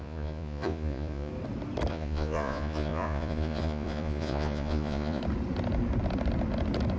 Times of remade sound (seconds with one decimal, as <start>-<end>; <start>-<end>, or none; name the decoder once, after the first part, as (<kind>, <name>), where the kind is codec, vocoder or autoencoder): 0.0-1.3 (vocoder, Vocos); 1.9-5.2